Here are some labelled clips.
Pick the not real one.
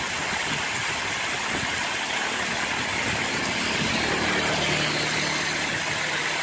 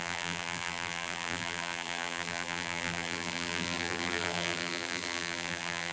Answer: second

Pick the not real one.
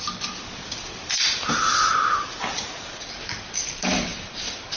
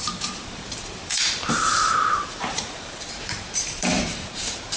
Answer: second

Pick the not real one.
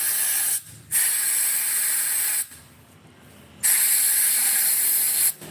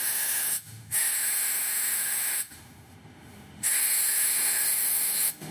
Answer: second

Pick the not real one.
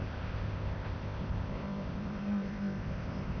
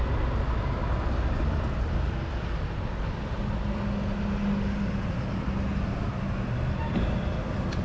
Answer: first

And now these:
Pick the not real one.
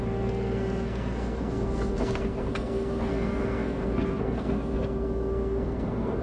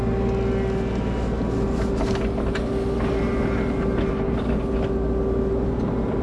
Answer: first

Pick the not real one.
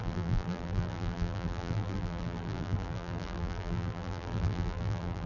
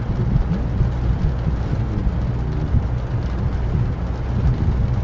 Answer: first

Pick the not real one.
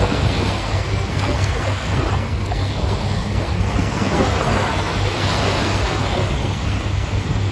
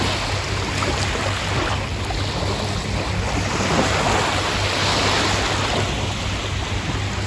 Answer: first